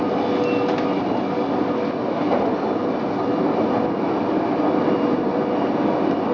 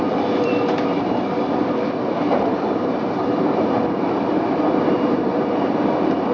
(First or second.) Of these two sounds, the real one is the first